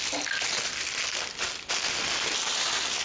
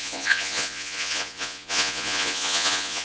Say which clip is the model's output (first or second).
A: second